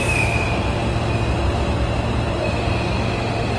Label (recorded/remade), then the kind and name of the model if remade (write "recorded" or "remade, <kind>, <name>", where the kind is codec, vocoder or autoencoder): recorded